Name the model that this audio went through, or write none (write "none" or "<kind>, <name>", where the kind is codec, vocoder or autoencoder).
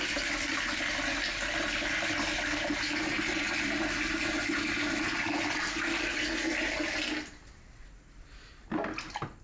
none